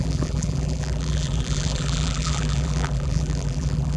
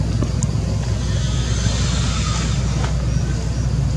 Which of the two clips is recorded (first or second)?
second